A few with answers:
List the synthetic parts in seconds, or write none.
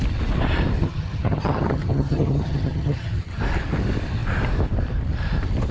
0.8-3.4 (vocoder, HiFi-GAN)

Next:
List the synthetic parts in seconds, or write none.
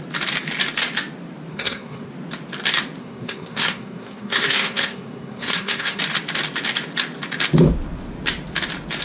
1.5-2.1 (codec, SNAC); 3.0-6.0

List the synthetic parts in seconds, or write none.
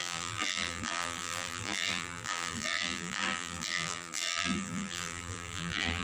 0.0-6.0 (vocoder, BigVGAN v2)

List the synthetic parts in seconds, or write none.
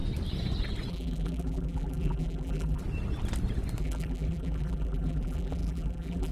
0.9-2.8 (vocoder, BigVGAN v2); 3.8-6.3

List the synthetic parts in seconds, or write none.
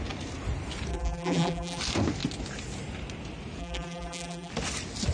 0.9-1.8 (vocoder, BigVGAN v2); 3.6-4.5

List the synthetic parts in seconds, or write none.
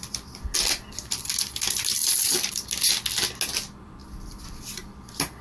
2.0-2.7 (vocoder, BigVGAN v2)